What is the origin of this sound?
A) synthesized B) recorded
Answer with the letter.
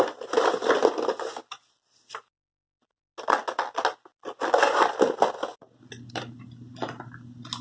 B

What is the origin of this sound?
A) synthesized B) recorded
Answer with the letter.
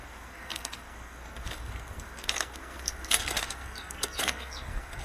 A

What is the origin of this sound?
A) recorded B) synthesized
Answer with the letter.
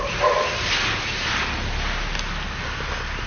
A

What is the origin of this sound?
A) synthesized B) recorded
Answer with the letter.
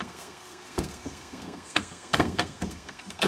A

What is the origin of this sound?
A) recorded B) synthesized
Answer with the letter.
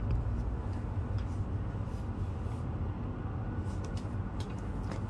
A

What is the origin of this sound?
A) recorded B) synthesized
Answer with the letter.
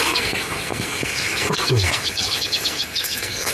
B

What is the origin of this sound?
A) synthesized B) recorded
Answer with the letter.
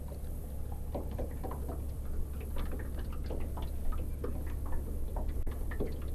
B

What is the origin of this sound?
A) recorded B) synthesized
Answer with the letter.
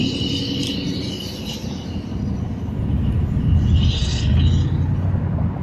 A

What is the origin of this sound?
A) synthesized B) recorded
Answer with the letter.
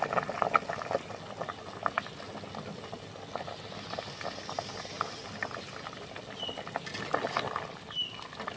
B